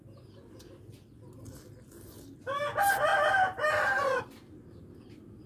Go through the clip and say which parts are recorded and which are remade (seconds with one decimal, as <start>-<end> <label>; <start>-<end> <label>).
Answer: 0.0-3.1 recorded; 3.1-4.2 remade; 4.2-5.5 recorded